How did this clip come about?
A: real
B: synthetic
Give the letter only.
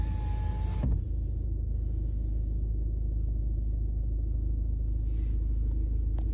A